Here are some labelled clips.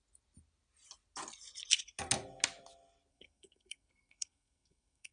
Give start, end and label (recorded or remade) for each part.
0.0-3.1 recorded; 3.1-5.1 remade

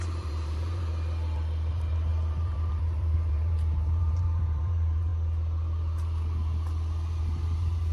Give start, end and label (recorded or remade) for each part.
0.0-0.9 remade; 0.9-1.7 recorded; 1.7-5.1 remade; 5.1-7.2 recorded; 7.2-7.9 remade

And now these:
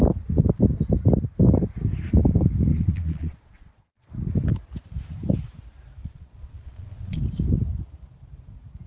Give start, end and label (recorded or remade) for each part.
0.0-2.7 recorded; 2.7-4.1 remade; 4.1-6.0 recorded; 6.0-7.2 remade; 7.2-8.9 recorded

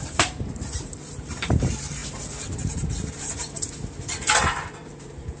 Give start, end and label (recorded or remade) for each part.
0.0-5.4 remade

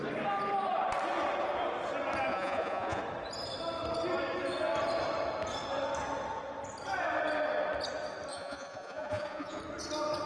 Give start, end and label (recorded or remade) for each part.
0.0-2.3 recorded; 2.3-3.0 remade; 3.0-8.3 recorded; 8.3-9.6 remade; 9.6-10.3 recorded

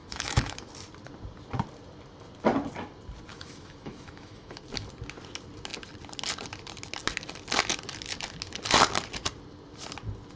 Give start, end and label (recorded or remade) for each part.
0.0-0.7 remade; 0.7-3.3 recorded; 3.3-4.6 remade; 4.6-10.4 recorded